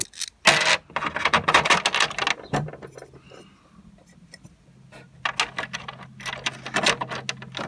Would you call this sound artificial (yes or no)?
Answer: no